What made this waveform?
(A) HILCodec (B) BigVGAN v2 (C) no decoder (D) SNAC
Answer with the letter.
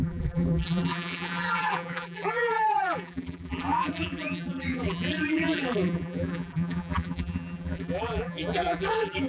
B